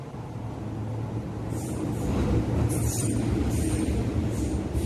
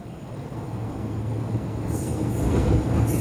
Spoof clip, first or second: second